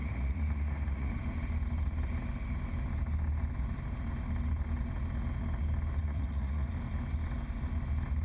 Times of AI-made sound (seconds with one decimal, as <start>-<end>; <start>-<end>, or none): 0.0-1.1; 6.0-6.7